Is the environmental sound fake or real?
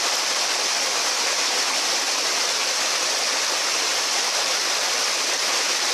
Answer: real